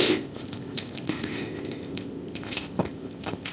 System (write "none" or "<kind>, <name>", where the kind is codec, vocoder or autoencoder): codec, ZipCodec